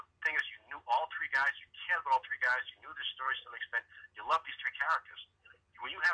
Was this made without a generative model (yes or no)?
yes